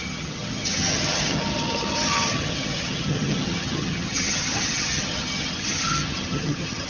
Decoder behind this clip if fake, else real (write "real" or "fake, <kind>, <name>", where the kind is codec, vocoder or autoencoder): fake, vocoder, HiFi-GAN